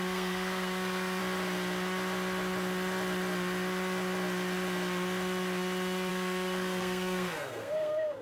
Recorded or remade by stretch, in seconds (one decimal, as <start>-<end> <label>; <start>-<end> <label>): 0.0-1.2 remade; 1.2-6.1 recorded; 6.1-8.2 remade